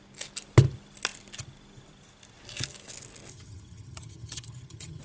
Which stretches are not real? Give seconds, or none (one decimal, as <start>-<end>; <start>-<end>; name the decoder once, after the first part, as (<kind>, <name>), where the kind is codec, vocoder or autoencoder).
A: 3.3-5.0 (vocoder, HiFi-GAN)